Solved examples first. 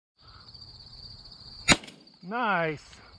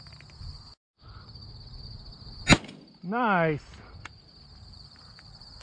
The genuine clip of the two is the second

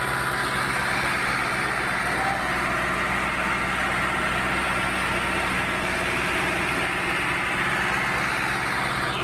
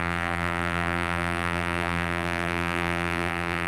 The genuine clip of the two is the first